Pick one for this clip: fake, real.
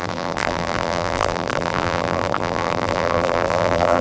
fake